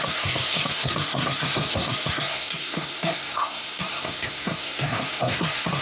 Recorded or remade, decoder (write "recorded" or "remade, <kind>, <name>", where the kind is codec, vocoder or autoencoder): remade, codec, SNAC